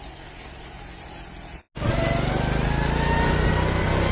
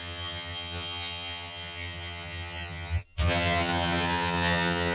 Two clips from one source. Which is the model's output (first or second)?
second